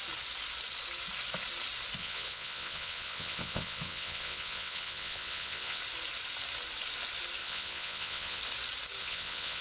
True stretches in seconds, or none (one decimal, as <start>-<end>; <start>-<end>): 0.0-2.0; 5.8-7.4; 8.4-9.0